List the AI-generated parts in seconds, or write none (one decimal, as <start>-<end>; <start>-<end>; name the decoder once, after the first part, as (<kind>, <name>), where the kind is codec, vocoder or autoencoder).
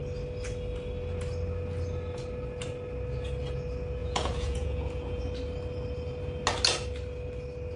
4.0-5.2 (vocoder, Vocos)